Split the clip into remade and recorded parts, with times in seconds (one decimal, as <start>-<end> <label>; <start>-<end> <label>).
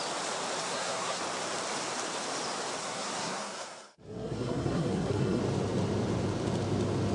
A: 0.0-0.6 recorded; 0.6-1.2 remade; 1.2-2.8 recorded; 2.8-5.4 remade; 5.4-7.1 recorded